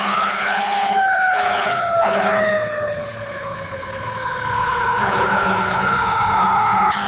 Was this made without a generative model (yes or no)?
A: no